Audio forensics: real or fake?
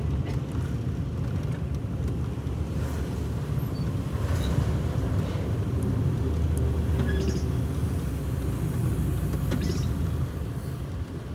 real